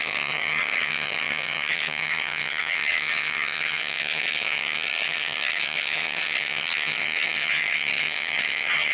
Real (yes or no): no